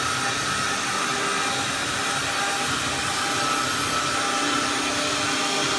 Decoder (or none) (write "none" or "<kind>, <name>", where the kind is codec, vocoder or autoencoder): none